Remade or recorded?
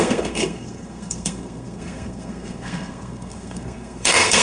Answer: remade